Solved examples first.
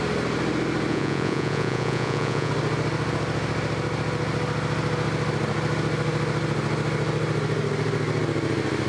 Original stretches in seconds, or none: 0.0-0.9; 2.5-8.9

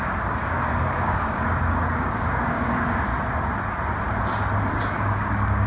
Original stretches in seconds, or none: 3.1-4.7

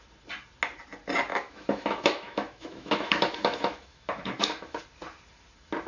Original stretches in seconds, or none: 0.0-1.3; 4.8-5.9

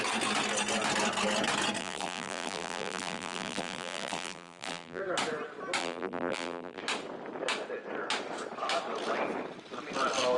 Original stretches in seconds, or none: 0.0-1.8; 5.0-5.8; 6.8-10.4

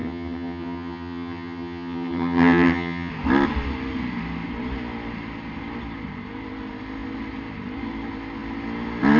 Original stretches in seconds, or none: 3.1-9.2

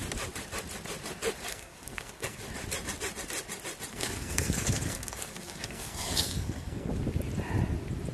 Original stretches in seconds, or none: 0.0-1.5; 2.4-3.9; 6.9-8.1

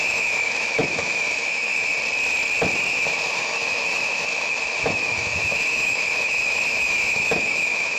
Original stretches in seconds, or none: 1.9-2.9

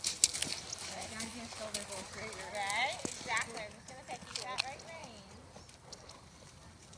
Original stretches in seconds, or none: 0.0-7.0